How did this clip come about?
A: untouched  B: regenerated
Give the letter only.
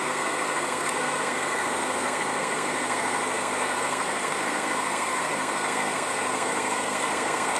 B